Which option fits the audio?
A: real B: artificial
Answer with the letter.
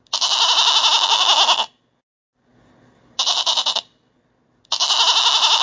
A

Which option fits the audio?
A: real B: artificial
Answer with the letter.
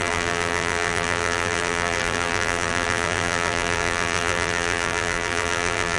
B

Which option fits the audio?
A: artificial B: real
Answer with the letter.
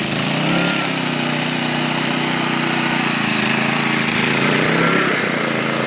A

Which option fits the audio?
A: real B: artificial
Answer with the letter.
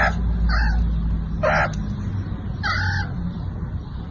A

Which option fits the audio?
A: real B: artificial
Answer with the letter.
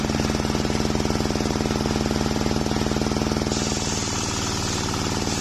A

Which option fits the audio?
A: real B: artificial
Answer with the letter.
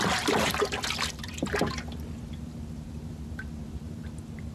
B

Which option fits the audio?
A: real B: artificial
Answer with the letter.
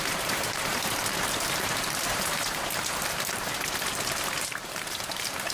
B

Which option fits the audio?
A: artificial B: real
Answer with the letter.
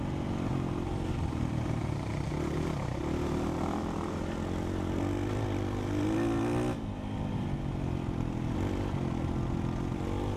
B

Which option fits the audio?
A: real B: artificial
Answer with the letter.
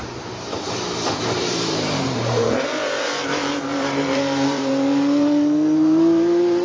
B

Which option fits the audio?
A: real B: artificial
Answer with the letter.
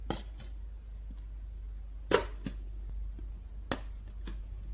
A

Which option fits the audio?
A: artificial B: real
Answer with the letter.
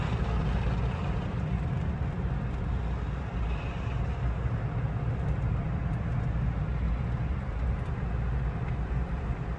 B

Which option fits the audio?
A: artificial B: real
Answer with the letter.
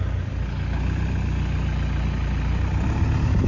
B